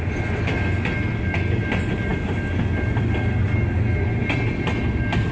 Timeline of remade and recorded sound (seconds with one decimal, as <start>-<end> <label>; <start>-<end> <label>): 0.0-5.3 recorded